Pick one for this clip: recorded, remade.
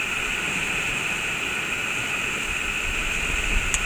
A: recorded